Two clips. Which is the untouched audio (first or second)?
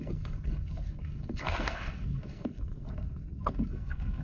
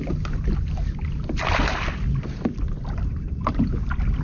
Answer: second